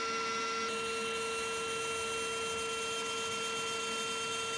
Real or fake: real